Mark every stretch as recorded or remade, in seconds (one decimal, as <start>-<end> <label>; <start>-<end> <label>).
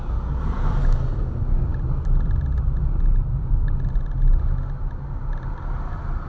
0.0-6.3 recorded